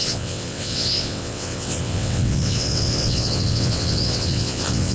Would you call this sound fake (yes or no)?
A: yes